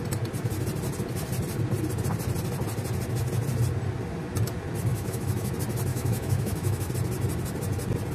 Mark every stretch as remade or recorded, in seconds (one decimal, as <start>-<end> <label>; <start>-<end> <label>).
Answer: 0.0-4.9 recorded; 4.9-5.5 remade; 5.5-5.9 recorded; 5.9-6.9 remade; 6.9-8.1 recorded